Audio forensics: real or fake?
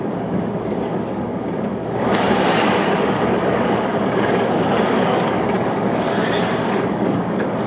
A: fake